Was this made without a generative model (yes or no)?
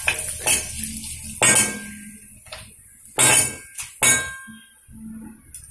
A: yes